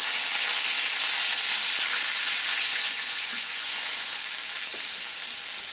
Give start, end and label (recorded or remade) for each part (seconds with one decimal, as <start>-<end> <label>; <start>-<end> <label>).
0.0-2.5 recorded; 2.5-4.2 remade; 4.2-5.7 recorded